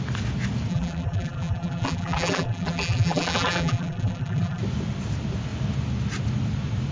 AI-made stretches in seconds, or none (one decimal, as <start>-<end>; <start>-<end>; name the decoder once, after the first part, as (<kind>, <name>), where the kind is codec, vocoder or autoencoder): 0.7-4.6 (vocoder, BigVGAN v2)